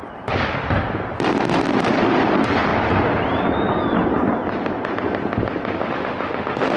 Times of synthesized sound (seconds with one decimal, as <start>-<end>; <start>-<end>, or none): 5.8-6.8